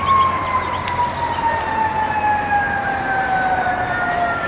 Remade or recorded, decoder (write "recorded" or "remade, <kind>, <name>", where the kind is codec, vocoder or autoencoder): recorded